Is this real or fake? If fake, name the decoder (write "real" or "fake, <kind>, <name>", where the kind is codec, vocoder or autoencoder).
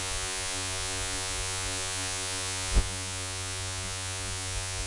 fake, vocoder, Vocos